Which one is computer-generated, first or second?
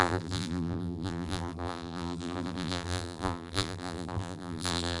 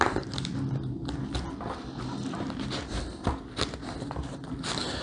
first